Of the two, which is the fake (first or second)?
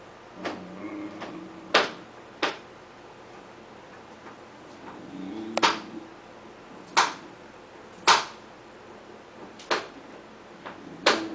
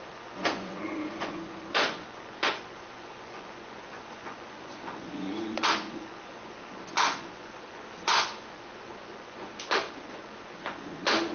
second